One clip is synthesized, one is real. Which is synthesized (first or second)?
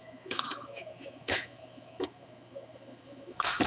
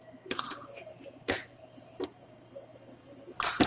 first